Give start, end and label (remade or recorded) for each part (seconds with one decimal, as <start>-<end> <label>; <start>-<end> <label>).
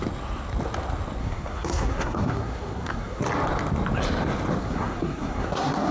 0.0-1.2 recorded; 1.2-3.2 remade; 3.2-4.6 recorded; 4.6-5.9 remade